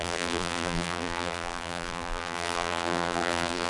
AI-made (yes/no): yes